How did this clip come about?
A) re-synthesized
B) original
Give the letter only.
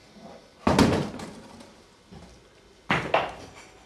B